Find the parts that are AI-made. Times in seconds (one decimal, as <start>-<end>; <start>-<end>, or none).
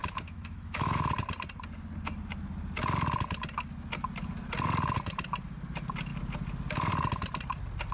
0.0-1.1